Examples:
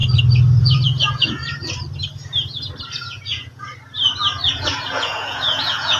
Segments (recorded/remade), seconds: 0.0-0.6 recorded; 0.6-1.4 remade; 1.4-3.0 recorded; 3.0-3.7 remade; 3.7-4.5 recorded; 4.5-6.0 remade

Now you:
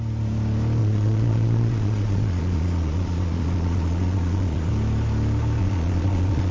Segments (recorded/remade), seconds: 0.0-0.8 recorded; 0.8-4.7 remade; 4.7-5.6 recorded; 5.6-6.5 remade

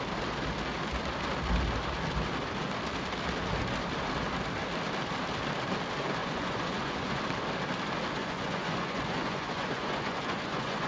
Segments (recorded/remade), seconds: 0.0-6.2 recorded; 6.2-7.2 remade; 7.2-8.2 recorded; 8.2-10.9 remade

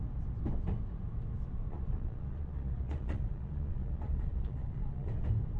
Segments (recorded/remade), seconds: 0.0-1.7 recorded; 1.7-5.1 remade; 5.1-5.6 recorded

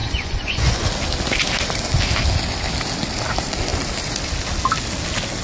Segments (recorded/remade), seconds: 0.0-0.9 remade; 0.9-5.4 recorded

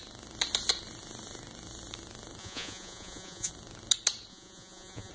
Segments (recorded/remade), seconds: 0.0-2.4 recorded; 2.4-3.5 remade; 3.5-4.3 recorded; 4.3-5.1 remade

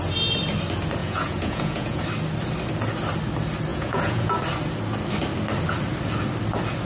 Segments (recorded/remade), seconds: 0.0-1.0 recorded; 1.0-2.0 remade; 2.0-3.7 recorded; 3.7-4.3 remade; 4.3-6.9 recorded